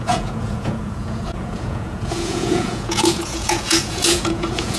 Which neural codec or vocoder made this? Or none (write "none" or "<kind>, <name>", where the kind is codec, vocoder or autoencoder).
vocoder, Vocos